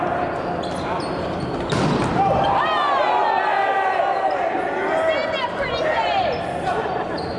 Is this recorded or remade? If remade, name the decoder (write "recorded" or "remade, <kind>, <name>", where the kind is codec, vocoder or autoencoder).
recorded